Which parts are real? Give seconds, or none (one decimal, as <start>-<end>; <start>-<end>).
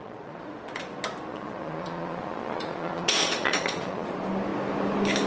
0.8-1.3; 4.1-5.3